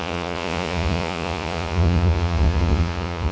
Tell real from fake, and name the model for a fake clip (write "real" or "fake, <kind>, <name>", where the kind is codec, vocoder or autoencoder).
fake, vocoder, Vocos